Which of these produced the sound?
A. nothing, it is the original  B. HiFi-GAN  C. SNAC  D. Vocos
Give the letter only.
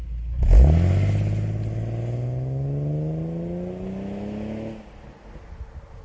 A